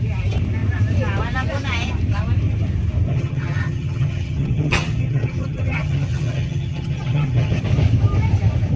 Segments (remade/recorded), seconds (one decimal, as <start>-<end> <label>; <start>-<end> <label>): 0.0-3.1 recorded; 3.1-7.6 remade; 7.6-8.8 recorded